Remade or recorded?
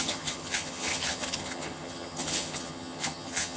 remade